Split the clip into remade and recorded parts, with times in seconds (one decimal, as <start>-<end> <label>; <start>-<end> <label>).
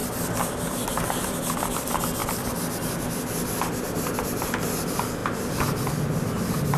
0.0-6.8 recorded